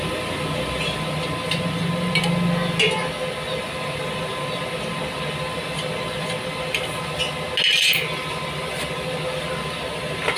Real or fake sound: real